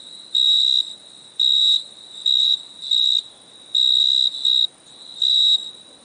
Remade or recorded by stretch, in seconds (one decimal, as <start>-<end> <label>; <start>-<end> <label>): 0.0-6.0 recorded